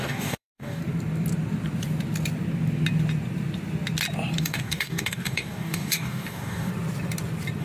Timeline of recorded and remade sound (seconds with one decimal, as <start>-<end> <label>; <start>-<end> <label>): 0.0-0.8 remade; 0.8-4.4 recorded; 4.4-6.7 remade; 6.7-7.6 recorded